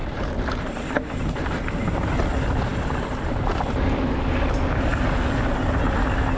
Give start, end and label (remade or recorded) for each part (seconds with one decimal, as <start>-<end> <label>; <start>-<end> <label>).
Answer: 0.0-6.4 recorded